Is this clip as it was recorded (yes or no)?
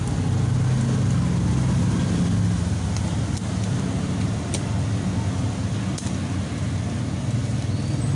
yes